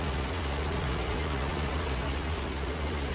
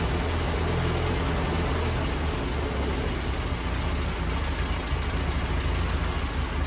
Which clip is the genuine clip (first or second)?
second